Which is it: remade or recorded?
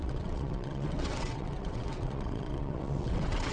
remade